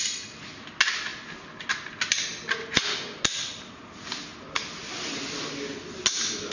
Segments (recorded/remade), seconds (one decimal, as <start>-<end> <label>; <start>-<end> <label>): 0.0-6.5 recorded